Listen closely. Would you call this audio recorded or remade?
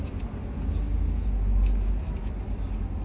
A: recorded